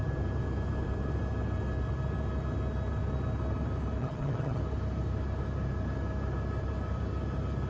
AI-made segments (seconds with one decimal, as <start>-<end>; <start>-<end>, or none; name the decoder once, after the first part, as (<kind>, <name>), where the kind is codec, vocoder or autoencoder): 4.0-4.6 (vocoder, HiFi-GAN)